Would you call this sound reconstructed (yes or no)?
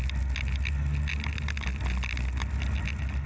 no